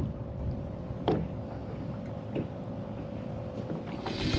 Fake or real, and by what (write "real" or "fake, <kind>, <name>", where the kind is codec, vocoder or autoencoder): real